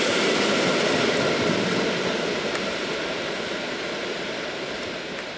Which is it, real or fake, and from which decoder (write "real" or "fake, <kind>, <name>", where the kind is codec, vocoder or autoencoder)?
real